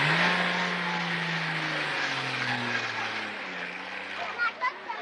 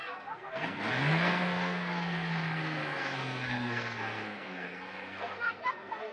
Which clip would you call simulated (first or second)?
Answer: second